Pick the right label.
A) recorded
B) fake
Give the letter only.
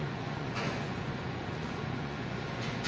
B